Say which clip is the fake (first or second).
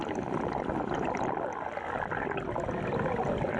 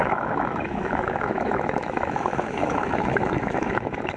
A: second